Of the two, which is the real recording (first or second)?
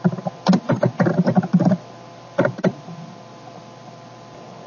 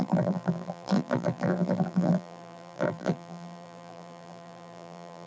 first